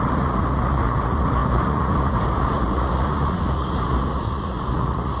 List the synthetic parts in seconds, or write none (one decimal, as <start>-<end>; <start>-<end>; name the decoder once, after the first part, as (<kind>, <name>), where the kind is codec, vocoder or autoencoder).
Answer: 0.0-5.2 (vocoder, Vocos)